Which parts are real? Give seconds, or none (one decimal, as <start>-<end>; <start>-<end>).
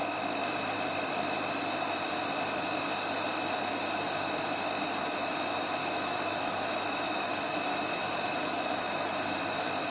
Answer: 0.0-5.8; 9.1-9.9